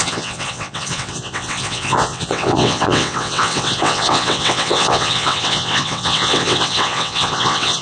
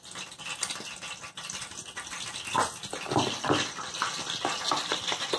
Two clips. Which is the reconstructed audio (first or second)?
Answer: first